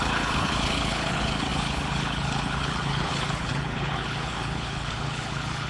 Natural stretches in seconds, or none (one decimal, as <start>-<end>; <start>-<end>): none